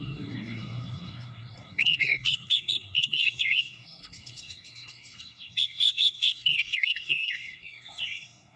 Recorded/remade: remade